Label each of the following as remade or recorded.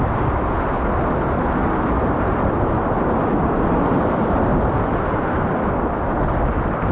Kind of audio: recorded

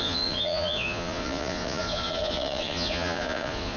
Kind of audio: remade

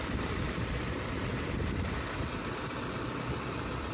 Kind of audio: remade